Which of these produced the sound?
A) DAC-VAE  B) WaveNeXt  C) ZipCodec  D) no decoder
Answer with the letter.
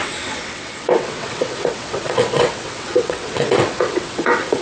B